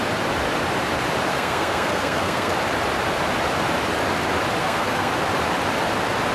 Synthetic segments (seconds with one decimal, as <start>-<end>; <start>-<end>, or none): 1.3-2.5; 4.6-5.1